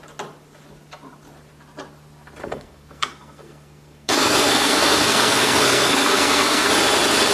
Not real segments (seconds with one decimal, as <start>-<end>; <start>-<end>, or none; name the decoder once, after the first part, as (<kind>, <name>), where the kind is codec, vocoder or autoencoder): 2.4-6.7 (codec, SNAC)

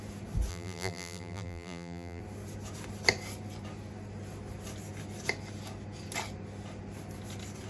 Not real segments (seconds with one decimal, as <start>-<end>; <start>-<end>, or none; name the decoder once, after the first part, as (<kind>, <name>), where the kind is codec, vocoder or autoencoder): 0.5-2.2 (vocoder, BigVGAN v2)

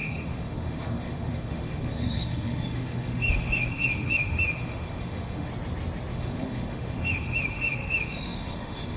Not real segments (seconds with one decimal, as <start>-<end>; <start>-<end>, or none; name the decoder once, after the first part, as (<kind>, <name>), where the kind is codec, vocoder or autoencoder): 0.0-5.5 (autoencoder, DAC-VAE); 6.1-9.0

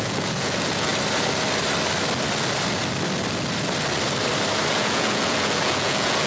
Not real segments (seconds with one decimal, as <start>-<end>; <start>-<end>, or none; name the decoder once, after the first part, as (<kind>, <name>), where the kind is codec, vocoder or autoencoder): 0.0-0.9 (vocoder, Vocos); 4.7-6.3

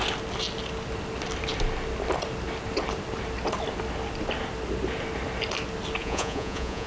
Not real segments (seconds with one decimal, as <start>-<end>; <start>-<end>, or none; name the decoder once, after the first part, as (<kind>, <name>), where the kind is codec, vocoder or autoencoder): 6.0-6.9 (vocoder, Vocos)

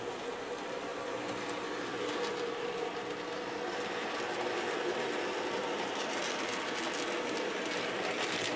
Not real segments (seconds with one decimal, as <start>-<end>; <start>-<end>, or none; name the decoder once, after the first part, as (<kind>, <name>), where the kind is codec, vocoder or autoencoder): none

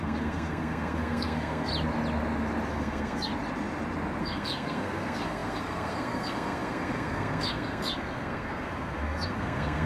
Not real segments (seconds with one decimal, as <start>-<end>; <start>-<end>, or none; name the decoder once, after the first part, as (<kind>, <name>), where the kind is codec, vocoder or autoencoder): 0.0-1.7 (codec, SNAC); 2.7-3.3; 4.2-9.9